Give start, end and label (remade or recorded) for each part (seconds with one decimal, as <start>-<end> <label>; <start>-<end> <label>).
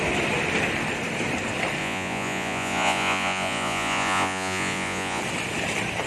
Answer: 0.0-1.8 recorded; 1.8-5.2 remade; 5.2-6.1 recorded